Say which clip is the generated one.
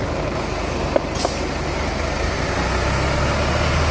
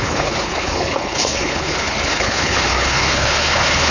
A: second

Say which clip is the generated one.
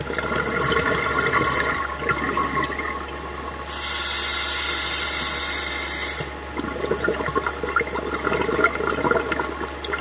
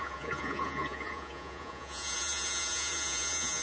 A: second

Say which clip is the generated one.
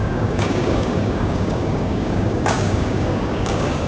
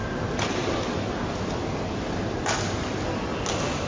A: first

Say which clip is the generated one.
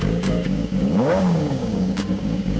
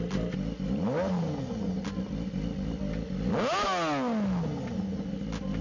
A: first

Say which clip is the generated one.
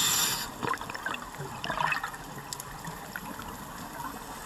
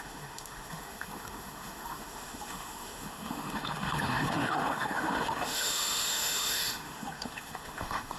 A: second